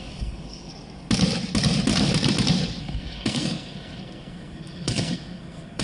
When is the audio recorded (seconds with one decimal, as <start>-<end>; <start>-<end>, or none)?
0.7-2.8